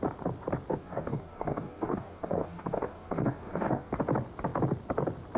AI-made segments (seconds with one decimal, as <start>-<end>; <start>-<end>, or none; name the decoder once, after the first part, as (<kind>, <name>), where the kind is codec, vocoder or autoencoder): 0.7-3.9 (codec, DAC)